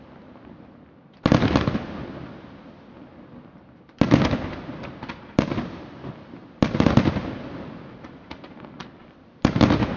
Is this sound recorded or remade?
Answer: recorded